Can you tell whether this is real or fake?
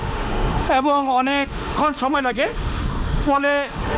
fake